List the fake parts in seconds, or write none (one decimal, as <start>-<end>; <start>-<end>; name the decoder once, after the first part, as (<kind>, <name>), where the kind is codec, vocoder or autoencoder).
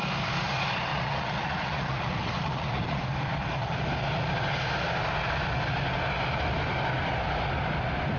0.9-3.0 (vocoder, Vocos)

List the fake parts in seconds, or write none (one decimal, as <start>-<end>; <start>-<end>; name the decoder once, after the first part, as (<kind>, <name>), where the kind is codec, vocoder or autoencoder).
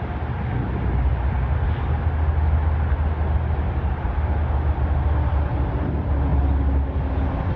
none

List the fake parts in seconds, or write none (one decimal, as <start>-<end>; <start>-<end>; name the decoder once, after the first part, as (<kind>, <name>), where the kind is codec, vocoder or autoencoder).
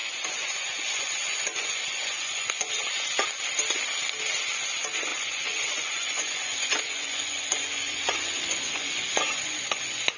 0.0-2.7 (vocoder, Vocos); 5.1-10.2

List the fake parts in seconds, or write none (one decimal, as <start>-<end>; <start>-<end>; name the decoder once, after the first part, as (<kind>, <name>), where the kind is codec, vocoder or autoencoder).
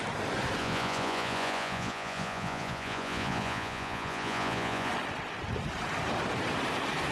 0.6-4.9 (vocoder, Vocos)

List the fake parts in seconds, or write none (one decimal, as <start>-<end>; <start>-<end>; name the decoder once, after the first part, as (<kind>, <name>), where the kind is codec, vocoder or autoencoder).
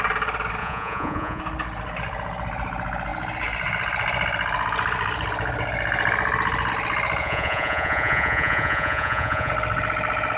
0.6-1.4 (vocoder, Vocos); 7.2-9.5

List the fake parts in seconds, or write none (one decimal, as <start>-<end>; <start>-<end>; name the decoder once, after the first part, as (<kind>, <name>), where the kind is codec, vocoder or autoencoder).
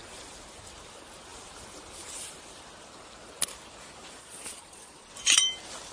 4.2-5.1 (vocoder, Vocos)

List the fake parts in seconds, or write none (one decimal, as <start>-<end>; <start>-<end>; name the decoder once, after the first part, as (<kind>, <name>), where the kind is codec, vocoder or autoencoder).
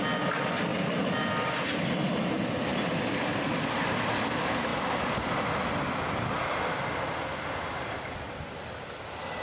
none